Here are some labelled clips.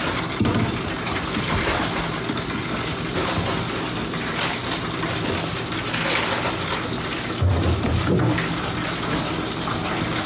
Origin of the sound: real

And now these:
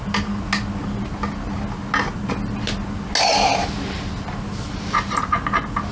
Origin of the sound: real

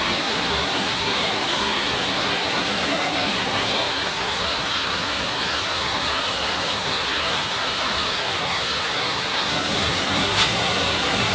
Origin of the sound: fake